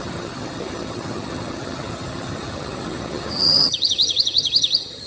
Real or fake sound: fake